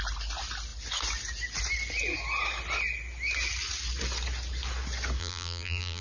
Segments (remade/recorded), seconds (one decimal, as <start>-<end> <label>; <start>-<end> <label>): 0.0-5.2 recorded; 5.2-6.0 remade